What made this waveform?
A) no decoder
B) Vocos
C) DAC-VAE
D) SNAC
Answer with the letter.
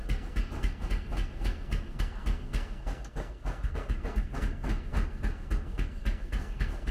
D